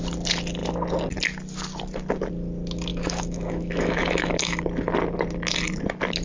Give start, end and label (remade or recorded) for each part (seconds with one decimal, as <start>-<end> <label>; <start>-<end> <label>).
0.0-2.9 recorded; 2.9-4.6 remade; 4.6-6.2 recorded